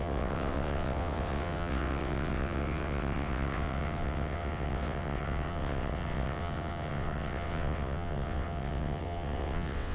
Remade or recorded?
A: remade